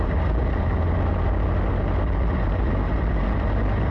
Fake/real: real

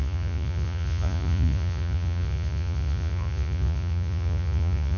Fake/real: fake